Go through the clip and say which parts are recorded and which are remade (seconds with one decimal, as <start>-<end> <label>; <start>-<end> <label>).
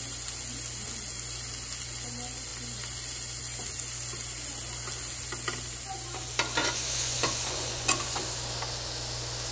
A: 0.0-6.6 recorded; 6.6-8.2 remade; 8.2-9.5 recorded